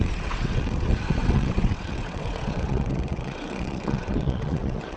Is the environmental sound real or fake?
fake